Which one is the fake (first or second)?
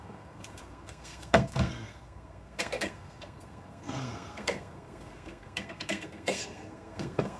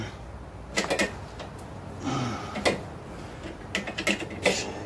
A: first